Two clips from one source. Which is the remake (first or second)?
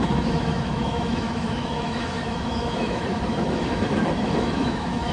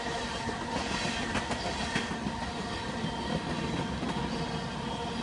first